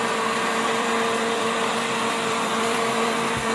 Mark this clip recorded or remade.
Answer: remade